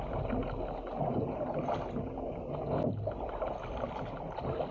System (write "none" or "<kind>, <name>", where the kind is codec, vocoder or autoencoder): none